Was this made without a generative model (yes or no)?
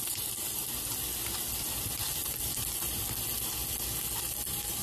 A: yes